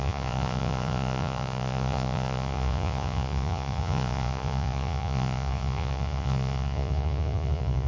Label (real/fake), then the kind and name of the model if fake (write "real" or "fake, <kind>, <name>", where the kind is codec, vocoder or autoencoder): fake, vocoder, Vocos